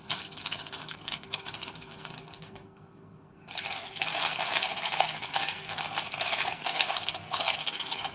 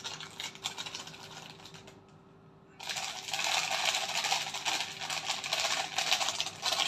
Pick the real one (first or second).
second